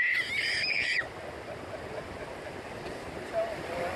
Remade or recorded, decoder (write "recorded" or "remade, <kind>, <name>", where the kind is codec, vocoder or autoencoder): recorded